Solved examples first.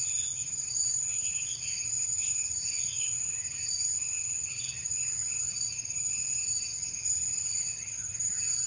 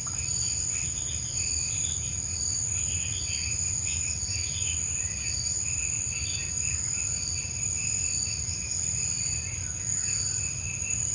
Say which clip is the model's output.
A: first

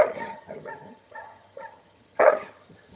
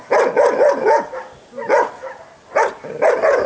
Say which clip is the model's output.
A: first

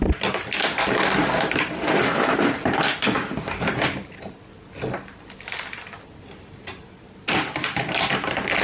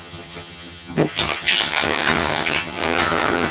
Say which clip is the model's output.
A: second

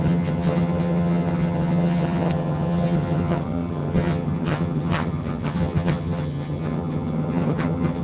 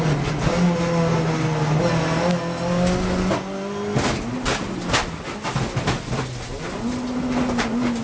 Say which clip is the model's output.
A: first